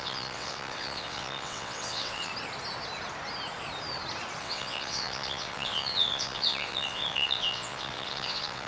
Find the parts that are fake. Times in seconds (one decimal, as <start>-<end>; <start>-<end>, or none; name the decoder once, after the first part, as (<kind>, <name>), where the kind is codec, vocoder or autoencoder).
0.0-2.3 (vocoder, WaveNeXt); 4.4-8.7